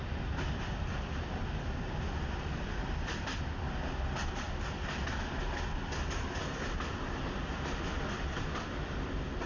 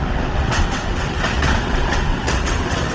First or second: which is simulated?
second